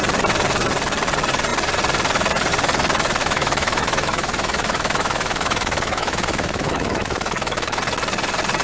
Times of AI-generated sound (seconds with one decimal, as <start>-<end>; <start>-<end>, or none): 3.2-7.8